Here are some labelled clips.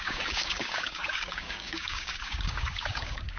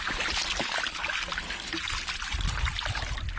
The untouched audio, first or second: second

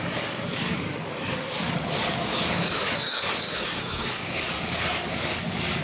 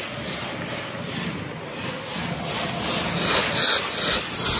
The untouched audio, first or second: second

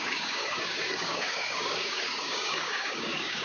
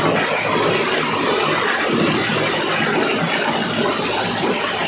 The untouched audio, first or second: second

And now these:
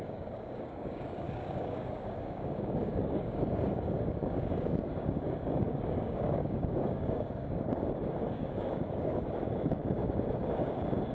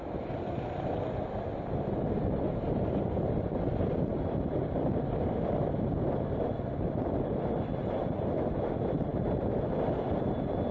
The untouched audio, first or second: second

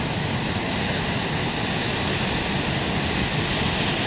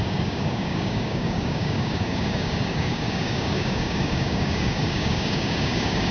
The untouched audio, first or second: first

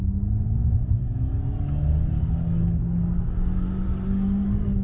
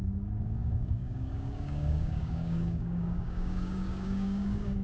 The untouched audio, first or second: first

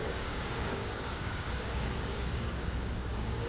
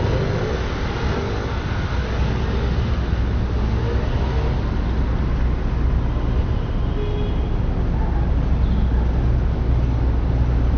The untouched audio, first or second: second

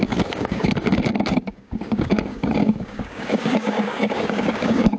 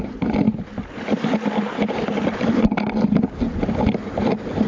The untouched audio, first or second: second